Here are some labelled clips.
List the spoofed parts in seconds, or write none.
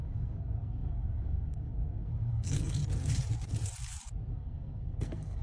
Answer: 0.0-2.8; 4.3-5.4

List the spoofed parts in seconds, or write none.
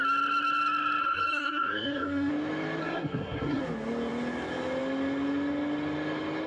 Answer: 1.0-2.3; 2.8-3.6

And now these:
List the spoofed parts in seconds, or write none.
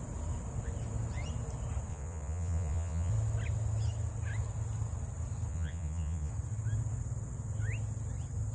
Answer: 1.9-3.1; 5.5-6.3